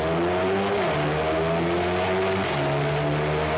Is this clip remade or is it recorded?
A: recorded